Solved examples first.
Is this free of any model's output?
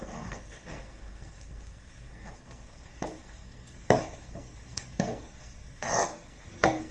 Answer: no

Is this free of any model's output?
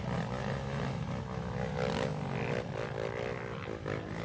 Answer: yes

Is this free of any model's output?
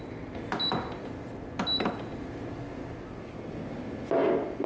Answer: yes